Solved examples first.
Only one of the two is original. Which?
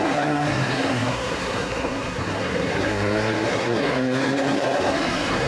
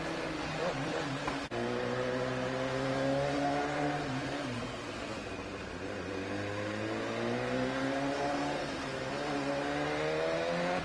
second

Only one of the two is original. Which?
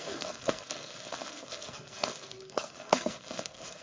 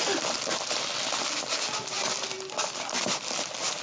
second